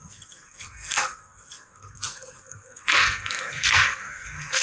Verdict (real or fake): fake